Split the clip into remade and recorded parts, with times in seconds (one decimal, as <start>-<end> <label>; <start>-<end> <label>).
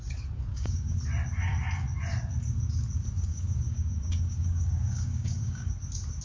0.0-0.5 recorded; 0.5-1.0 remade; 1.0-3.3 recorded; 3.3-5.7 remade; 5.7-6.2 recorded